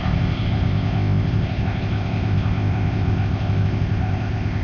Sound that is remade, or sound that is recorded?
remade